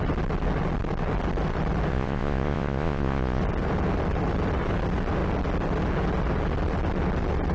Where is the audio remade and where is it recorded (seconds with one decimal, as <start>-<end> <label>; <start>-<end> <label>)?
0.0-1.9 recorded; 1.9-3.4 remade; 3.4-7.5 recorded